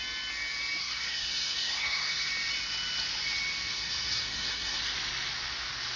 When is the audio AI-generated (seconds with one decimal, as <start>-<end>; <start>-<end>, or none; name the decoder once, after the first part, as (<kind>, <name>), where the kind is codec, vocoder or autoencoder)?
0.8-2.3 (codec, SNAC); 3.7-4.8